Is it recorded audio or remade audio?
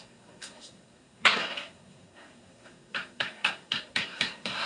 remade